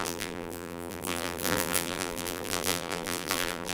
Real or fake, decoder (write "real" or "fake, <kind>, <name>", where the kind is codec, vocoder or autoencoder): fake, vocoder, BigVGAN v2